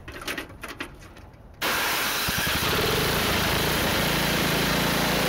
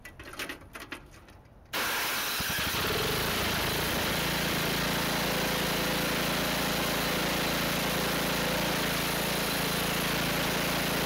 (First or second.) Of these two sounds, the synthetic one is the first